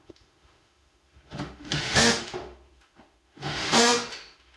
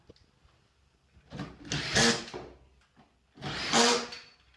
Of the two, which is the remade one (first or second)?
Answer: first